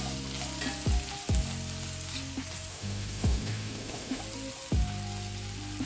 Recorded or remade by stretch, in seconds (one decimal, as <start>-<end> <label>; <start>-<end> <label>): 0.0-2.7 recorded; 2.7-4.2 remade; 4.2-5.9 recorded